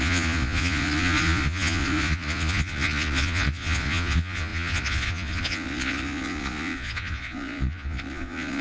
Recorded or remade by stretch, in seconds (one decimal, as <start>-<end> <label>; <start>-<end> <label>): 0.0-8.6 remade